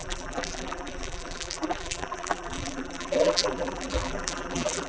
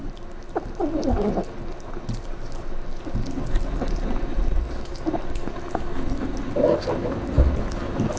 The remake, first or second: first